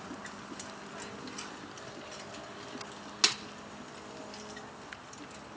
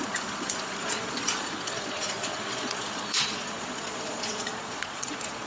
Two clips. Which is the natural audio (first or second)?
first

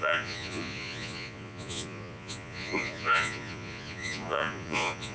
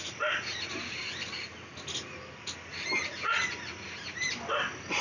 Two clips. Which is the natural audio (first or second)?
second